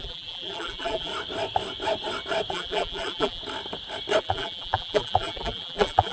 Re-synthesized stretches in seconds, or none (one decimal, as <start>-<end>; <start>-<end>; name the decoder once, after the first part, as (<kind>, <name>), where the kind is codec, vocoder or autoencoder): 0.0-1.1 (vocoder, BigVGAN v2); 2.5-3.4; 4.2-6.1